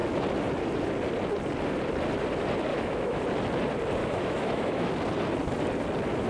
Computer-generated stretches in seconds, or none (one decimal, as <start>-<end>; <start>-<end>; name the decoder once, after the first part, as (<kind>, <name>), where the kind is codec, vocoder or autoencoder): 2.7-3.2 (autoencoder, DAC-VAE); 4.0-4.9